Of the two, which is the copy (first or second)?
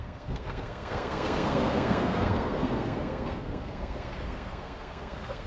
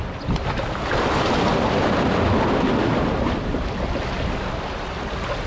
first